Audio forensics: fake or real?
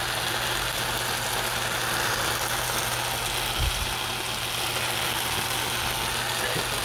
real